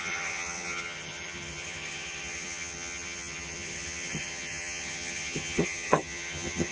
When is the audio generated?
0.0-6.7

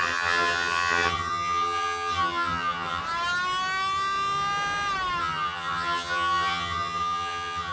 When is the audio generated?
0.0-3.0; 5.2-7.7

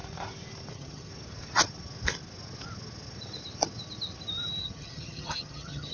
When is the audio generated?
0.7-1.1; 4.6-5.9

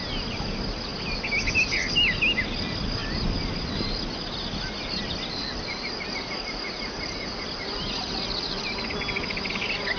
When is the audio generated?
none

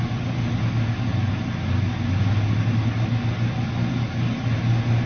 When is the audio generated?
none